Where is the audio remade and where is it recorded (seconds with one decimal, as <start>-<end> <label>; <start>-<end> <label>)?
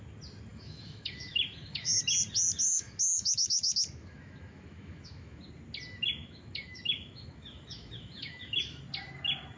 0.0-0.5 recorded; 0.5-2.0 remade; 2.0-2.7 recorded; 2.7-5.4 remade; 5.4-6.2 recorded; 6.2-8.8 remade; 8.8-9.6 recorded